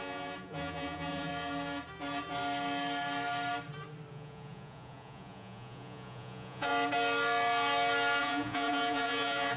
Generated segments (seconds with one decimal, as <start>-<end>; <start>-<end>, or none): 0.0-1.3; 4.1-6.7; 8.2-9.6